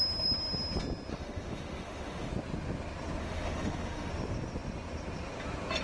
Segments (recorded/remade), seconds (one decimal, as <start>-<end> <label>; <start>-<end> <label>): 0.0-1.1 recorded; 1.1-2.3 remade; 2.3-3.2 recorded; 3.2-4.1 remade; 4.1-5.8 recorded